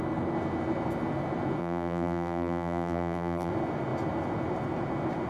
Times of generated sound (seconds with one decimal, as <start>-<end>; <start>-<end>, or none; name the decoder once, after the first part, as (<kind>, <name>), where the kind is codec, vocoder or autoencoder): 1.6-3.5 (vocoder, BigVGAN v2)